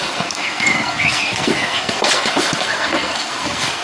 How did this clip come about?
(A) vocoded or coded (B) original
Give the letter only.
A